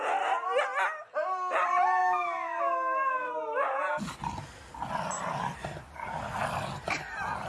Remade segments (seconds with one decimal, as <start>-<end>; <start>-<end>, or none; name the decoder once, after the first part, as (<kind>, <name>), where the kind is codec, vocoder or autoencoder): 2.0-3.3 (codec, DAC)